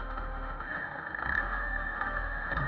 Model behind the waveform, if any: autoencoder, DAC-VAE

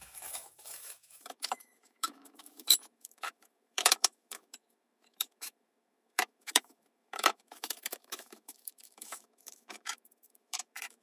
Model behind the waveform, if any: autoencoder, DAC-VAE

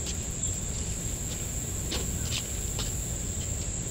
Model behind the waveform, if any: none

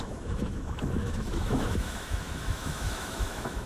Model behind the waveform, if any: autoencoder, DAC-VAE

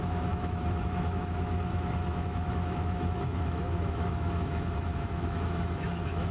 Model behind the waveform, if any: autoencoder, DAC-VAE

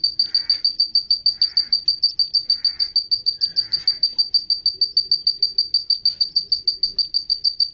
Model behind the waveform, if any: none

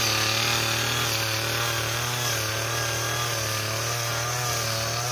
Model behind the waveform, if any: none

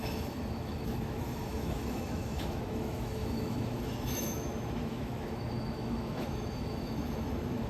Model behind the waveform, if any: autoencoder, DAC-VAE